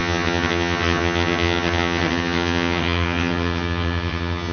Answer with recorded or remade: remade